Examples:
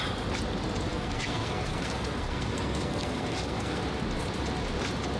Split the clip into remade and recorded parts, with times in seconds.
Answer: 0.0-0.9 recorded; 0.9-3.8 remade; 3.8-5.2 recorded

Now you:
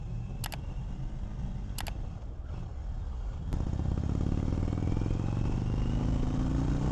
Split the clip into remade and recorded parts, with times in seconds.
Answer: 0.0-6.9 recorded

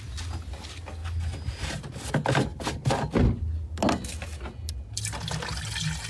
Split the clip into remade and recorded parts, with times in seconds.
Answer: 0.0-6.1 recorded

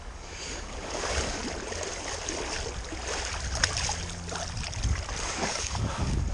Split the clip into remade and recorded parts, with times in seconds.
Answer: 0.0-1.4 remade; 1.4-5.2 recorded; 5.2-6.3 remade